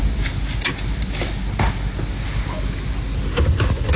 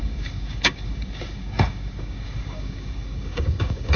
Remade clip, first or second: second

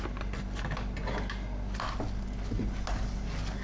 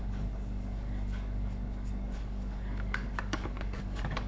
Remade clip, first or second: second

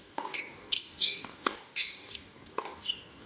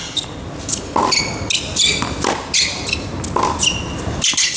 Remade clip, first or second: first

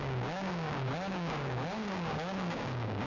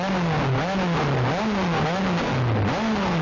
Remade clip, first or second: first